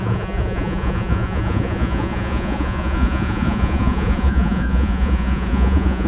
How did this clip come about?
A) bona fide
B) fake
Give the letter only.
B